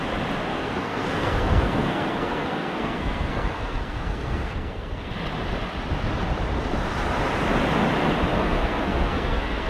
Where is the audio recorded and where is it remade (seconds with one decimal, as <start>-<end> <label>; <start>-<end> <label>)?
0.0-0.5 recorded; 0.5-5.1 remade; 5.1-8.3 recorded; 8.3-9.7 remade